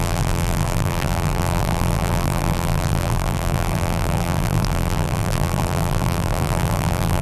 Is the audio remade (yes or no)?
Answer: yes